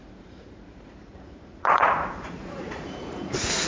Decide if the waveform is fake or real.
fake